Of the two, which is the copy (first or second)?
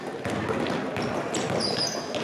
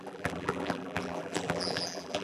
second